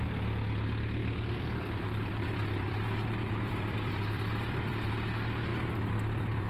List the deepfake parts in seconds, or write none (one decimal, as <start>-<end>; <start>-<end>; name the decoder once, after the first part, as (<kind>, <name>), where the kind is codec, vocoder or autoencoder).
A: 1.0-4.9 (vocoder, BigVGAN v2); 5.5-6.5